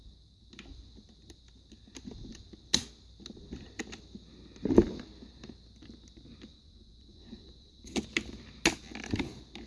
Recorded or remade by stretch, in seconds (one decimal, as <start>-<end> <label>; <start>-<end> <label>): 0.0-6.5 recorded; 6.5-7.9 remade; 7.9-9.7 recorded